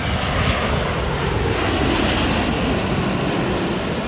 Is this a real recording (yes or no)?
yes